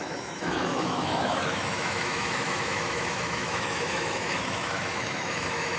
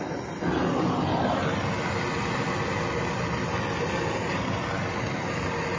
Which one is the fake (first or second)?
first